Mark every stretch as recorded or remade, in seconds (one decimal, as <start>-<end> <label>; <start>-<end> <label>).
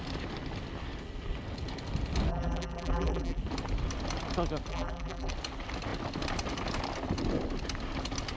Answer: 0.0-2.3 recorded; 2.3-3.4 remade; 3.4-4.7 recorded; 4.7-5.3 remade; 5.3-8.4 recorded